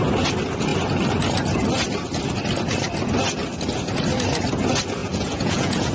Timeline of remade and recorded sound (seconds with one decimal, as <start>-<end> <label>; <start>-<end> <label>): 0.0-5.0 recorded; 5.0-5.9 remade